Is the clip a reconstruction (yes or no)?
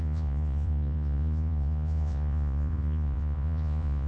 yes